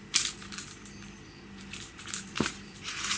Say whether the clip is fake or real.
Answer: fake